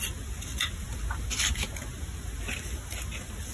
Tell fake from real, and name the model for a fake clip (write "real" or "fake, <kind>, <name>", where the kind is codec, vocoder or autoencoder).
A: real